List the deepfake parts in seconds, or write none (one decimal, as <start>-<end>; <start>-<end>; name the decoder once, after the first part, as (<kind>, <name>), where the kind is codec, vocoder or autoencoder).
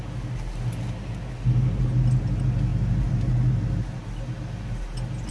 none